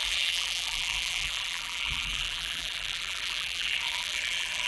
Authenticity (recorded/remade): remade